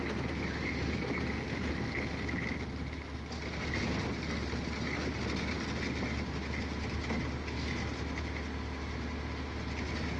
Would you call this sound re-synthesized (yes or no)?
no